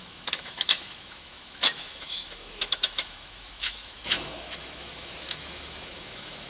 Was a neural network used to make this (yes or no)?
yes